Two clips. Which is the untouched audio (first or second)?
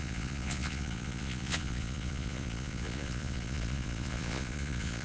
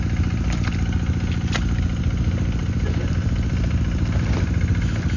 second